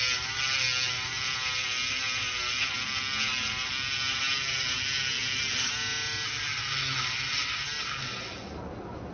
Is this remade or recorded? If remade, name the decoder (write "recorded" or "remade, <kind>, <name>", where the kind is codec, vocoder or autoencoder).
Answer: recorded